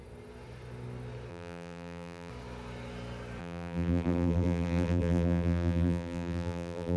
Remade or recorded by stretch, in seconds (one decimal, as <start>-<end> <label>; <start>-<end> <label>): 0.0-1.3 recorded; 1.3-2.3 remade; 2.3-3.4 recorded; 3.4-7.0 remade